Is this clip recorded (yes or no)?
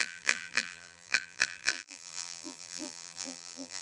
no